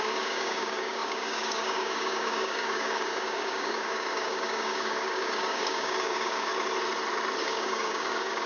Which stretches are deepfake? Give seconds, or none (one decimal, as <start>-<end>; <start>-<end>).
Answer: 0.0-6.5; 7.4-8.5